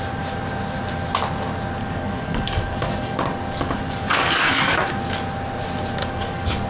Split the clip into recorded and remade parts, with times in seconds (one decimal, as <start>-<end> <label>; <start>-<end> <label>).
0.0-1.8 recorded; 1.8-4.9 remade; 4.9-6.0 recorded; 6.0-6.7 remade